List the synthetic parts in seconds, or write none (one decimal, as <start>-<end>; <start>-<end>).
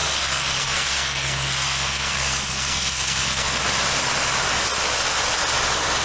0.0-3.6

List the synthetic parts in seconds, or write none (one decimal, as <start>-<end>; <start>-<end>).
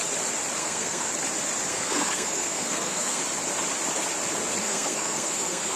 0.6-1.1; 1.7-3.2; 4.6-5.8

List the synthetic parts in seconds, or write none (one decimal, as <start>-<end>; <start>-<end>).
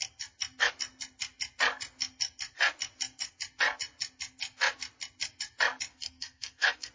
5.9-6.9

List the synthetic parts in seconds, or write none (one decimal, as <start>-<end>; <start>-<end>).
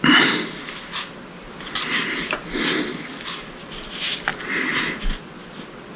none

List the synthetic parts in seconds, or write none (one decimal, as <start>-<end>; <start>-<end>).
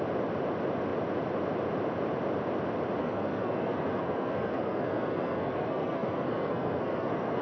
3.0-7.4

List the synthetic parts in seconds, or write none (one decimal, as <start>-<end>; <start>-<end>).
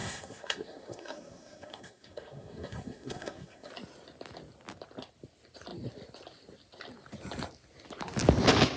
0.0-3.7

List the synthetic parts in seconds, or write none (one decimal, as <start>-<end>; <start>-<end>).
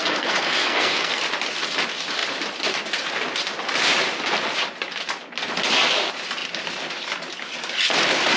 0.0-1.2